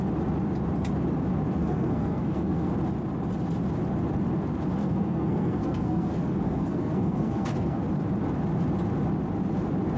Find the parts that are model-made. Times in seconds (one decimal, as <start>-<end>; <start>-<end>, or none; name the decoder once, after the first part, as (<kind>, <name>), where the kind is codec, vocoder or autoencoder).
1.6-2.7 (codec, SNAC); 4.8-7.8